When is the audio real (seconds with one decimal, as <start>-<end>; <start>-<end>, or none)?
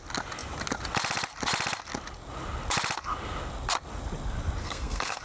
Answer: 0.0-4.6